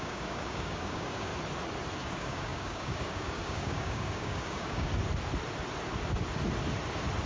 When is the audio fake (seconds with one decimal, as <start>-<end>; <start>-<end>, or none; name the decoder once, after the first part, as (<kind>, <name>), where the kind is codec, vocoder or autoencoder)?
0.0-1.3 (codec, DAC); 2.0-4.9